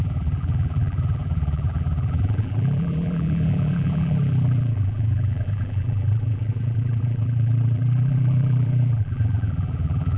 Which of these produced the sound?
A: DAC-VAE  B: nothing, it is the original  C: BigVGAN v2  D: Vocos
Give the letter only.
C